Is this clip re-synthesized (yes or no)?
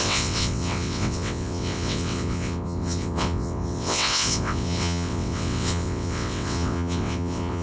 yes